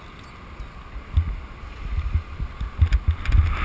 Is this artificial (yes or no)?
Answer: no